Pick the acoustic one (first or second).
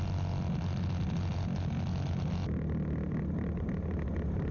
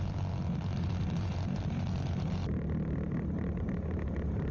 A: first